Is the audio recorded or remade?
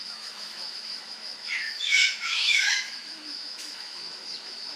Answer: remade